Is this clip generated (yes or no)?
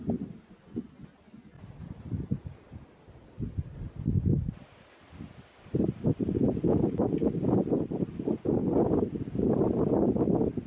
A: no